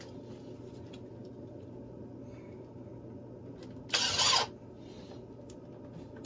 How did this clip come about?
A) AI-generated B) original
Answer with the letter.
B